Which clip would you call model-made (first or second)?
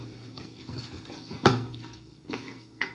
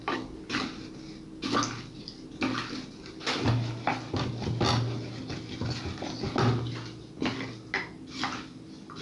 first